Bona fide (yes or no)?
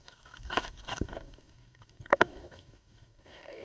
no